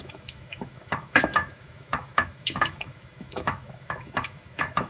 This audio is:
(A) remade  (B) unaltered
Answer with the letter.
A